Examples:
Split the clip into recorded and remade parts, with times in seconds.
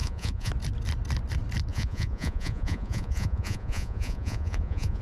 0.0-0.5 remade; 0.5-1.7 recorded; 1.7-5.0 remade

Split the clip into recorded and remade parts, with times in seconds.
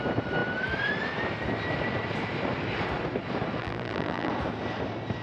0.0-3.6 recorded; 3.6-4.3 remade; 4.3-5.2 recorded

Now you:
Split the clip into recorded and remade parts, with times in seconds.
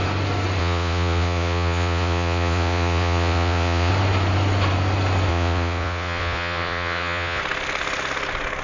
0.0-0.6 recorded; 0.6-3.9 remade; 3.9-5.3 recorded; 5.3-7.4 remade; 7.4-8.6 recorded